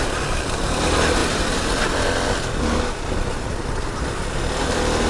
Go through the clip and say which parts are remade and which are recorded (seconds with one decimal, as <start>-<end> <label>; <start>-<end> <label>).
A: 0.0-5.1 recorded